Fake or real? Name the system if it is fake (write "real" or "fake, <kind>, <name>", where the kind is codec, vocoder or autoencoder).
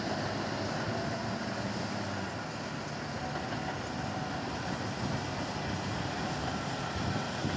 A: real